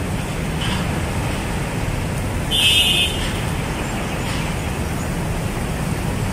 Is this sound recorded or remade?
recorded